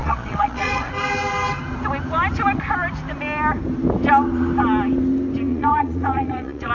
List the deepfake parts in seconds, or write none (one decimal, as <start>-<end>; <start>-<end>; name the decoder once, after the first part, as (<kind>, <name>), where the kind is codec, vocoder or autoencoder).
0.0-0.9 (vocoder, Vocos); 5.5-6.7